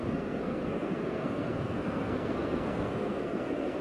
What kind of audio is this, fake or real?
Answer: fake